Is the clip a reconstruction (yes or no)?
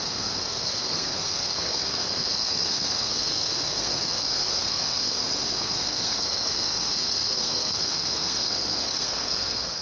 yes